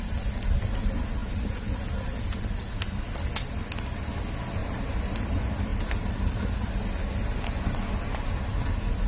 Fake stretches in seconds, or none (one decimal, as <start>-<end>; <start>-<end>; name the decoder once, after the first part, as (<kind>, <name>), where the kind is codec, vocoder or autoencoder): 4.6-5.2 (vocoder, BigVGAN v2)